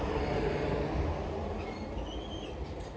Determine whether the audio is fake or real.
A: real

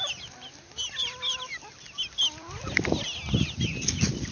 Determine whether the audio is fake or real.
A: real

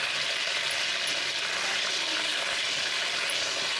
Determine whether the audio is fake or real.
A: real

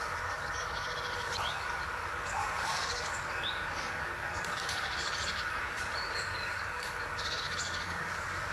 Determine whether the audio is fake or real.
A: fake